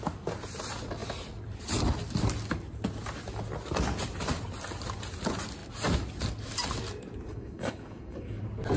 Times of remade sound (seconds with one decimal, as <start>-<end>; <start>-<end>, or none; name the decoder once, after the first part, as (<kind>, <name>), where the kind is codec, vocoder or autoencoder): 7.3-8.4 (codec, DAC)